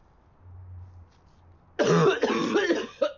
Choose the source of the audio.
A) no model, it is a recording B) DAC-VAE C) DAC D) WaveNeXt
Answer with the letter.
A